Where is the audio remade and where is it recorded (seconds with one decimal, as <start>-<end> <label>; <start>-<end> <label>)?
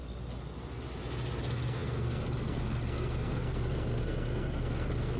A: 0.0-1.4 recorded; 1.4-5.2 remade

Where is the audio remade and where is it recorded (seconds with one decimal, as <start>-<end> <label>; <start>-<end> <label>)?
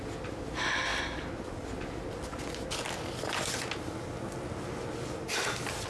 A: 0.0-5.9 recorded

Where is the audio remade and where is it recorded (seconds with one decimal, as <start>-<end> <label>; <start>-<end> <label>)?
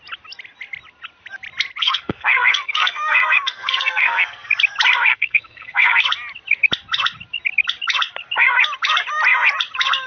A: 0.0-1.8 recorded; 1.8-4.5 remade; 4.5-5.1 recorded; 5.1-6.0 remade; 6.0-10.1 recorded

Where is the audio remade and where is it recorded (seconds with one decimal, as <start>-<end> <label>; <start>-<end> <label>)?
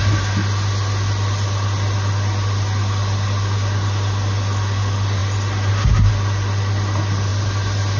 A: 0.0-8.0 recorded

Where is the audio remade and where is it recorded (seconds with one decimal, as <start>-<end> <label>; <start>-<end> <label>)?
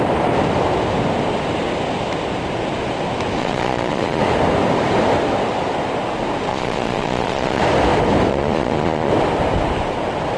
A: 0.0-3.4 recorded; 3.4-4.2 remade; 4.2-6.5 recorded; 6.5-7.6 remade; 7.6-8.3 recorded; 8.3-9.1 remade; 9.1-10.4 recorded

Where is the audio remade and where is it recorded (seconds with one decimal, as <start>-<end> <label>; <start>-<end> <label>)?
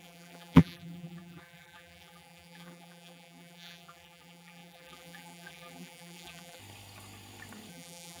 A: 0.0-6.6 remade; 6.6-7.7 recorded; 7.7-8.2 remade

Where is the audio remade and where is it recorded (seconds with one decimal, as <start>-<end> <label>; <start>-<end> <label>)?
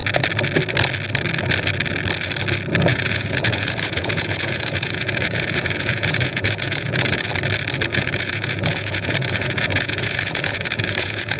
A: 0.0-2.9 recorded; 2.9-7.3 remade; 7.3-7.9 recorded; 7.9-11.4 remade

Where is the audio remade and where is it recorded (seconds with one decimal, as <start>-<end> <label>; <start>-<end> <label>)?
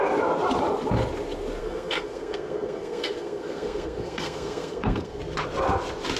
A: 0.0-1.6 recorded; 1.6-5.2 remade; 5.2-6.2 recorded